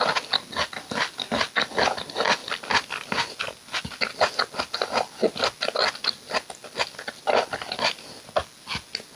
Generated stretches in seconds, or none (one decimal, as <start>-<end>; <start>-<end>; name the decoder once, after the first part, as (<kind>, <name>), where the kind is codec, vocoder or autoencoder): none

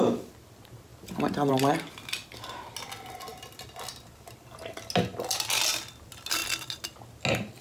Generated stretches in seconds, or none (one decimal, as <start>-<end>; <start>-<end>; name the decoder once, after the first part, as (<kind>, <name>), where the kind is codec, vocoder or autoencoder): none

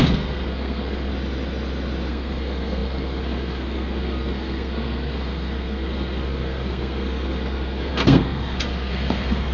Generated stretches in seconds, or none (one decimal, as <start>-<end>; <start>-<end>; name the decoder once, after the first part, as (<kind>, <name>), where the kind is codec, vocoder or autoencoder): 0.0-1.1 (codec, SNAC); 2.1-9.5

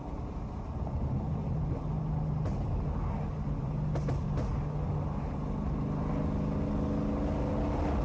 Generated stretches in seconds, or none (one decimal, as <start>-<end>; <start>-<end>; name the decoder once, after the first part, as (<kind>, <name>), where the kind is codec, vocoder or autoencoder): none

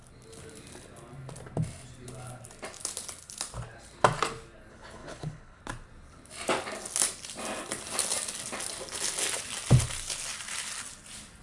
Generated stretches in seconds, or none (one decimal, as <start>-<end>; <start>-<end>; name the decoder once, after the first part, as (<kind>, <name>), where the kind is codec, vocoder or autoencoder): 4.7-5.6 (codec, HILCodec)

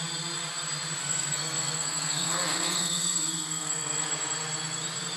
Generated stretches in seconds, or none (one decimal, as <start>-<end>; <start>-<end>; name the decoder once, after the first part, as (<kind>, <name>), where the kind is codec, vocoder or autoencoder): 1.0-4.1 (codec, SNAC)

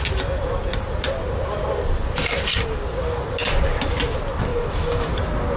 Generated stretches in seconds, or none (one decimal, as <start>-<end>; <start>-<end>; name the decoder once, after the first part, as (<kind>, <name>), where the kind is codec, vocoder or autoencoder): 4.5-5.1 (autoencoder, DAC-VAE)

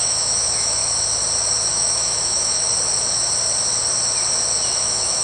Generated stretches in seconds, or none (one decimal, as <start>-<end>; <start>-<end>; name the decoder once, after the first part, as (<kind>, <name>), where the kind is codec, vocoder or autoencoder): 0.0-0.8 (autoencoder, DAC-VAE); 1.7-2.7; 4.8-5.2